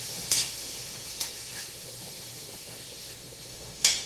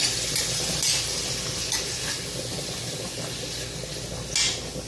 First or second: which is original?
second